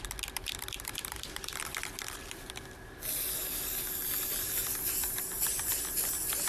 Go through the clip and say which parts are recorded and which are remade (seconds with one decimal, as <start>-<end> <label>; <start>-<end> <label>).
0.0-0.4 recorded; 0.4-1.6 remade; 1.6-6.5 recorded